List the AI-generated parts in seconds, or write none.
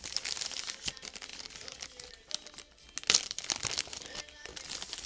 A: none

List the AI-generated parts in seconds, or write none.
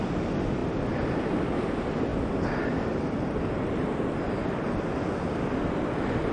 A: none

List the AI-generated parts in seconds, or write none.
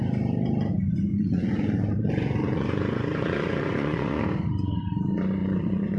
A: 1.1-4.2 (vocoder, Vocos); 5.4-6.0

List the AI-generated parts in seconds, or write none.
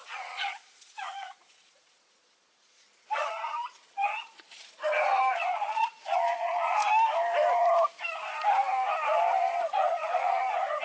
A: 0.0-6.8 (vocoder, Vocos); 9.6-10.8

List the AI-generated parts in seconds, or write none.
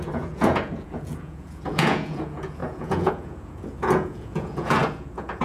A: 0.0-5.4 (vocoder, Vocos)